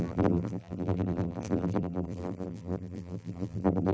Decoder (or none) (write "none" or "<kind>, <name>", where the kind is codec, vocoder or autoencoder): vocoder, BigVGAN v2